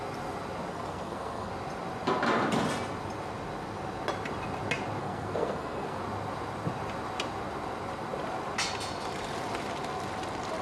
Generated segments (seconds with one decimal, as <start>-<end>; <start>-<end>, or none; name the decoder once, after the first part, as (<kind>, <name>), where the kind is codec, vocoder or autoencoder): 0.7-1.5 (codec, SNAC); 5.0-6.0